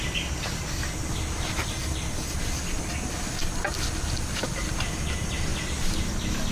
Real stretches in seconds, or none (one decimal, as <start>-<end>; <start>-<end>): 0.0-6.5